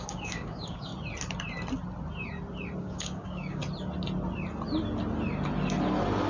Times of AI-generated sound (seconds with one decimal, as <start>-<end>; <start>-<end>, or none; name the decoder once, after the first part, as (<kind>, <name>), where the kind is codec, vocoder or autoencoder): 0.0-0.9 (codec, DAC); 2.8-3.6